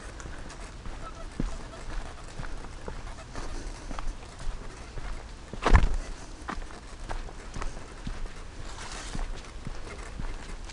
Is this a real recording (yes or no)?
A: yes